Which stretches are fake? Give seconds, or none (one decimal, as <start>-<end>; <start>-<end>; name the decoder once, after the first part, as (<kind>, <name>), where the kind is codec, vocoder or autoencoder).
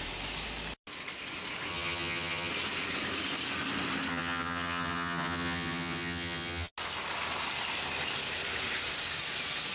1.7-2.5 (vocoder, HiFi-GAN); 4.1-6.7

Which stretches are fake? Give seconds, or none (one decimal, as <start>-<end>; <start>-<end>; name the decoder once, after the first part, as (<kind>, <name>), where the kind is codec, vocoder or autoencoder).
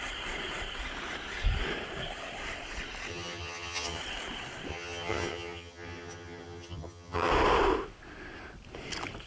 3.1-4.0 (vocoder, HiFi-GAN); 4.7-7.3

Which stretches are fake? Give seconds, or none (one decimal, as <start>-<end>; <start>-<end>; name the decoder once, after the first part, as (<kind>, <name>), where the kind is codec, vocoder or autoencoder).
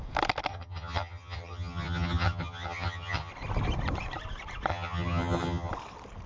0.5-3.3 (vocoder, HiFi-GAN); 4.7-5.7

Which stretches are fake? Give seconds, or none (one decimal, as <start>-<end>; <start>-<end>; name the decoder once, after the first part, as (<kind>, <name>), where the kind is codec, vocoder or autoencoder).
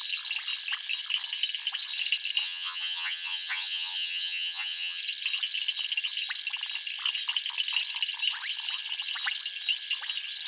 2.4-5.0 (vocoder, HiFi-GAN)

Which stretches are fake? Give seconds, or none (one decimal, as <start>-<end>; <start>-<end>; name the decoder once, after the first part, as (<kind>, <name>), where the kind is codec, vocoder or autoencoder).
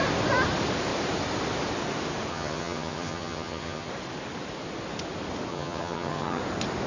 2.3-3.9 (vocoder, HiFi-GAN); 5.5-6.4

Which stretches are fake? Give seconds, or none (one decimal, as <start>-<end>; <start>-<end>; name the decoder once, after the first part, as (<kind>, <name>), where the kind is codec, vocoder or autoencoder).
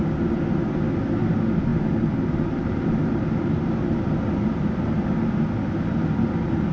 none